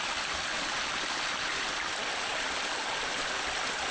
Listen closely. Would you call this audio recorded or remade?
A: recorded